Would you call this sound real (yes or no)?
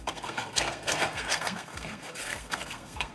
no